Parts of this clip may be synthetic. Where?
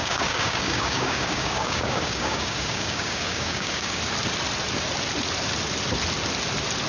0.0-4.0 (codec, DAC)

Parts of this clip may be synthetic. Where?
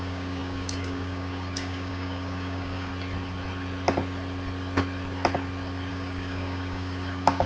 0.0-2.9 (codec, DAC); 5.9-7.5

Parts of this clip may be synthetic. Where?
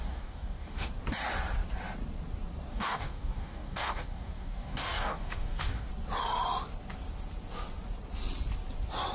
0.0-0.9 (codec, DAC); 2.7-5.9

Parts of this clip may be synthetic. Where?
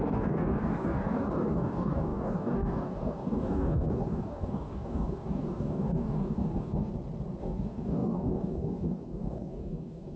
0.0-6.9 (codec, DAC); 7.4-10.2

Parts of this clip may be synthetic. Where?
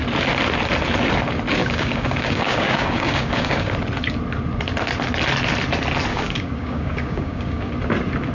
1.6-3.7 (codec, DAC); 6.1-7.7